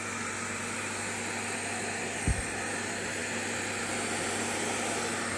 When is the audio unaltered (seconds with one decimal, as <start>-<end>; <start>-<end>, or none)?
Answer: 0.0-5.4